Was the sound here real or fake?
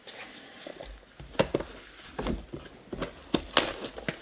real